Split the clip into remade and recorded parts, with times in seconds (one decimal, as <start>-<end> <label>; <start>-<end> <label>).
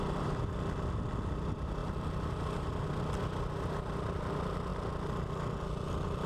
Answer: 0.0-6.3 recorded